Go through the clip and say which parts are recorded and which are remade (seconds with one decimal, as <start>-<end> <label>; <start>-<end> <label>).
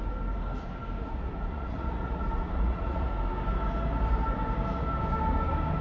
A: 0.0-1.0 recorded; 1.0-3.1 remade; 3.1-5.8 recorded